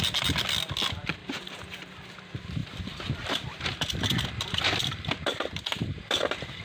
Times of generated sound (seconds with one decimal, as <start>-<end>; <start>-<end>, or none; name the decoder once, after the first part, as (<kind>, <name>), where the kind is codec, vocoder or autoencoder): 1.2-1.9 (vocoder, BigVGAN v2); 2.6-6.6